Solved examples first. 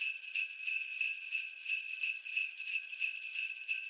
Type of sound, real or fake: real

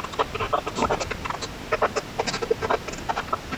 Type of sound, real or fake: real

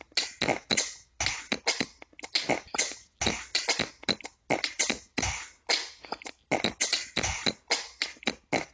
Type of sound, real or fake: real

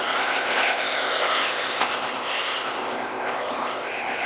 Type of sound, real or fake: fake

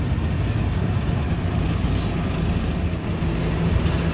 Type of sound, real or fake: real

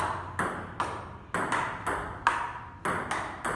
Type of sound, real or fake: real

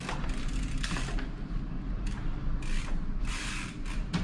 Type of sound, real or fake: real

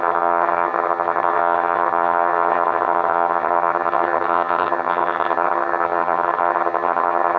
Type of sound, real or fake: fake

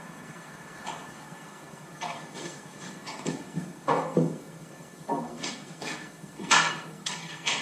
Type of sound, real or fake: fake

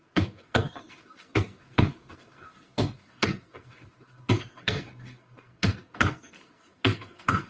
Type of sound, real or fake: fake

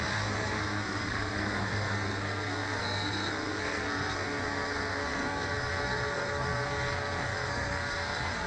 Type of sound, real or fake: fake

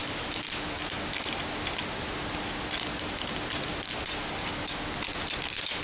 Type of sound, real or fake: real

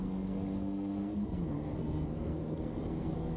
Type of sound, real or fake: fake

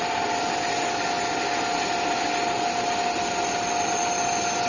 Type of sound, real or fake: real